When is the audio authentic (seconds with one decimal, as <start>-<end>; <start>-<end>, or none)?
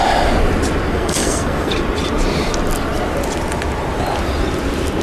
0.0-0.9; 1.7-5.0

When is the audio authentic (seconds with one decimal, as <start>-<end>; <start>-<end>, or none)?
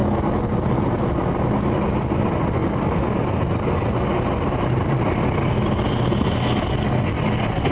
0.0-7.7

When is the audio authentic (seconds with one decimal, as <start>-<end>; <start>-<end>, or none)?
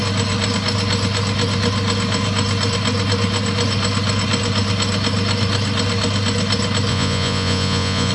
0.0-6.9